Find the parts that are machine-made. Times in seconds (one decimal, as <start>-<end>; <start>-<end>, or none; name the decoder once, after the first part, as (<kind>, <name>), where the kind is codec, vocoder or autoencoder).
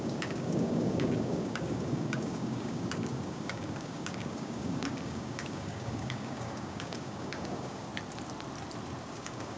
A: 0.0-7.9 (codec, DAC); 9.1-9.6